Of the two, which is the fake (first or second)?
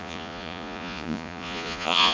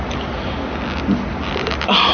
first